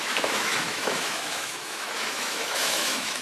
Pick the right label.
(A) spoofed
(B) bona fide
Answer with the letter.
A